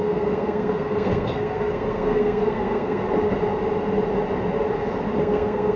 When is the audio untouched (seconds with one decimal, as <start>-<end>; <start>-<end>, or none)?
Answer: 3.0-5.2